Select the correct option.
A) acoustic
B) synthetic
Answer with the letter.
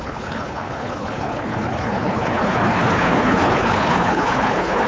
B